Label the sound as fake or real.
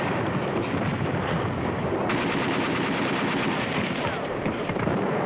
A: fake